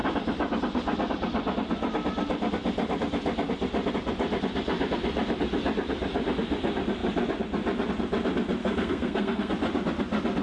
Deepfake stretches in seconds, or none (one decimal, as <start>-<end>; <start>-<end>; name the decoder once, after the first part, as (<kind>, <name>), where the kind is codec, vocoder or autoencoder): 8.6-9.5 (codec, SNAC)